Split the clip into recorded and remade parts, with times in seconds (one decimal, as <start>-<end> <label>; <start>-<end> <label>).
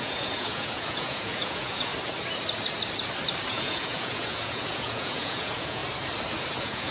0.0-1.9 remade; 1.9-3.5 recorded; 3.5-5.8 remade; 5.8-6.5 recorded; 6.5-6.9 remade